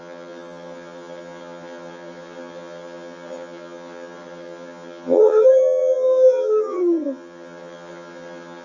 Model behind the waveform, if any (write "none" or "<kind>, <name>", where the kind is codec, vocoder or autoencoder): vocoder, HiFi-GAN